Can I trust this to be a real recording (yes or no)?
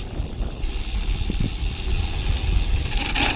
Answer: yes